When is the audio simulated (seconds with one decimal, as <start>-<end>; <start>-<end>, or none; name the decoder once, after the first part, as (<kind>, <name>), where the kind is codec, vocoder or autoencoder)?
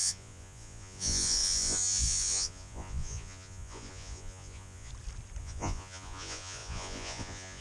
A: 0.0-4.9 (vocoder, Vocos); 5.4-7.6